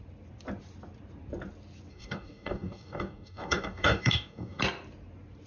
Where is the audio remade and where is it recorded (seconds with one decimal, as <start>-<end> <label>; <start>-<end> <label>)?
0.0-1.9 recorded; 1.9-4.6 remade; 4.6-5.5 recorded